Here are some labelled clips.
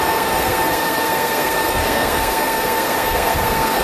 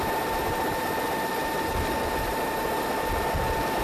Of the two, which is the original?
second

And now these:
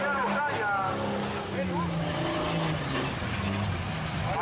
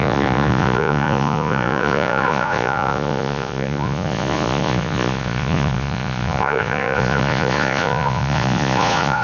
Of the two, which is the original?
first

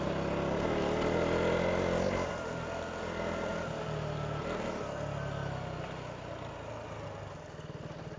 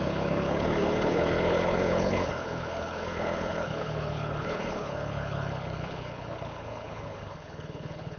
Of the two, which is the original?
first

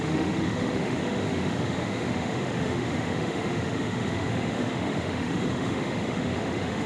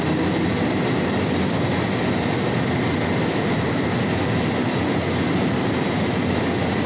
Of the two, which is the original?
second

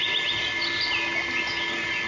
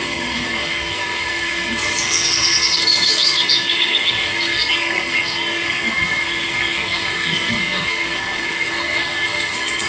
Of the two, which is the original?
first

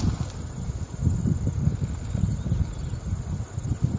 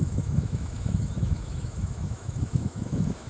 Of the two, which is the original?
first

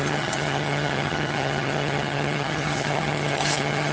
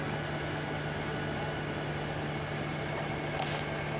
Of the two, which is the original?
second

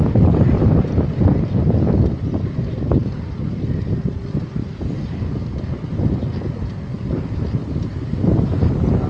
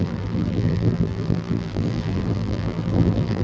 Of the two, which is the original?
first